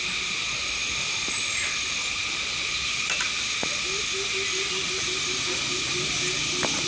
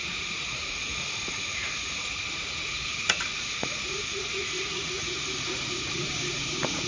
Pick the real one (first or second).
first